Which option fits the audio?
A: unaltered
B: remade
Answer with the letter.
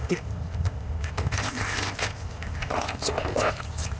B